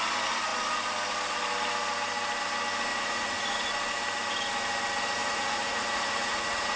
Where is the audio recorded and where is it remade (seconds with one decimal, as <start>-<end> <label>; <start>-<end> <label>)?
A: 0.0-2.9 recorded; 2.9-3.7 remade; 3.7-5.2 recorded; 5.2-6.8 remade